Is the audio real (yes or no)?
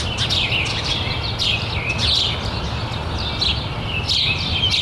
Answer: yes